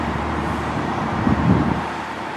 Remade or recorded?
remade